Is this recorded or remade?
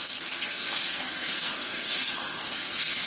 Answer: remade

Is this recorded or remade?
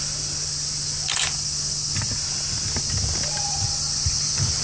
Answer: recorded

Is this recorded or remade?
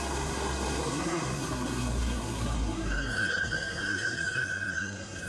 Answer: remade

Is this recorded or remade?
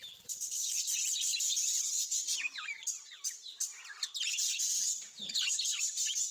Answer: remade